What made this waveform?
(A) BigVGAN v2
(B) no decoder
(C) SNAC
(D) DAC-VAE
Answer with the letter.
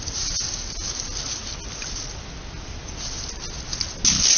B